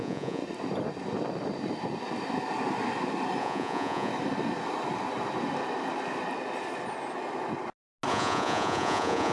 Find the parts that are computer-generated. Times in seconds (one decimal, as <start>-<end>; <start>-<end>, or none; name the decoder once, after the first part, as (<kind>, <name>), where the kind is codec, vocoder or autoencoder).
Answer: 0.0-0.4 (vocoder, Vocos); 3.4-4.1; 8.1-9.3